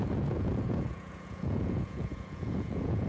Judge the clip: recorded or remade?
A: remade